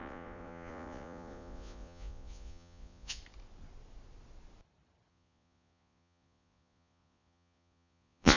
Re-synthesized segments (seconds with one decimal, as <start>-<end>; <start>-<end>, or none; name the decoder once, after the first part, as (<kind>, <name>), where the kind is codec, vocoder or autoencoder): 0.0-3.2 (vocoder, Vocos); 5.1-8.4